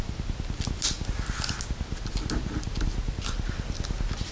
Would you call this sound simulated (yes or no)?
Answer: no